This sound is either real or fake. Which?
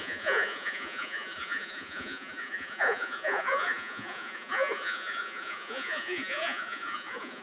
fake